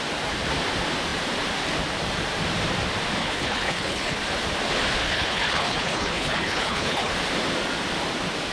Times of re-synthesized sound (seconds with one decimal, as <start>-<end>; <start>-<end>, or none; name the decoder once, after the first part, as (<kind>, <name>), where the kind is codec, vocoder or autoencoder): 3.2-4.2 (codec, HILCodec); 5.0-7.1